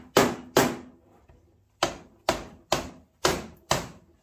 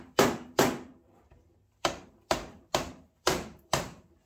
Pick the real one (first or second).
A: first